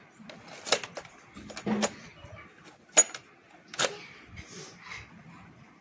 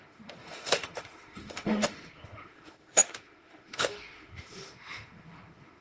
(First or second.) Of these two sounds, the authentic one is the first